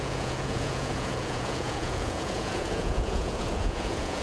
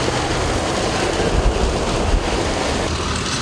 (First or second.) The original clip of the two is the second